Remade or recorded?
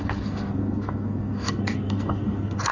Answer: remade